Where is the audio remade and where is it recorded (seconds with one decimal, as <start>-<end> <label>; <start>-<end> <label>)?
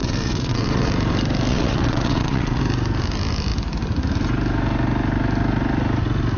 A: 0.0-0.9 remade; 0.9-1.5 recorded; 1.5-2.6 remade; 2.6-6.4 recorded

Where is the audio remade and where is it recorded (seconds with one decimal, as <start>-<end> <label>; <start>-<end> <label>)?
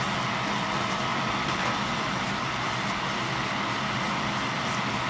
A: 0.0-5.1 recorded